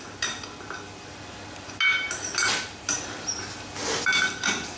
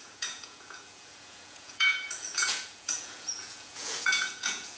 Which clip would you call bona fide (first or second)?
first